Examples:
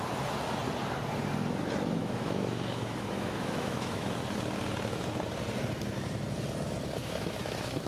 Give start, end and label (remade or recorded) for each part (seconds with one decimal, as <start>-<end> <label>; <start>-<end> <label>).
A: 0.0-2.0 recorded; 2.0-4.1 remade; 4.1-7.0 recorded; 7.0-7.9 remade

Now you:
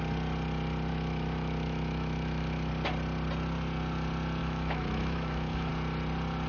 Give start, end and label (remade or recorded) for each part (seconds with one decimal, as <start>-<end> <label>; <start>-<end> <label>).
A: 0.0-0.9 recorded; 0.9-2.7 remade; 2.7-4.4 recorded; 4.4-5.7 remade; 5.7-6.5 recorded

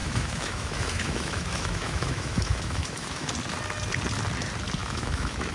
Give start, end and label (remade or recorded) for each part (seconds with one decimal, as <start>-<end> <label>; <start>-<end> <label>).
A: 0.0-3.3 remade; 3.3-4.8 recorded; 4.8-5.5 remade

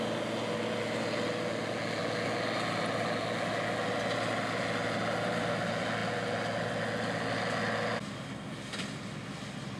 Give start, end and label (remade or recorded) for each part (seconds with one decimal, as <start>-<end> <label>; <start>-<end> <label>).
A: 0.0-9.8 recorded